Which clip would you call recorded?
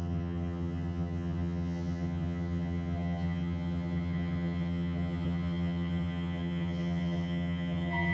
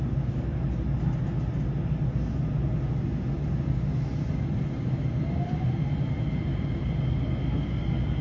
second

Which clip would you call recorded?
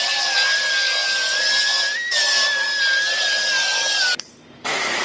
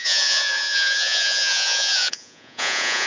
first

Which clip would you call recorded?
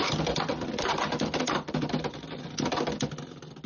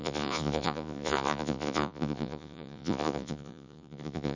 first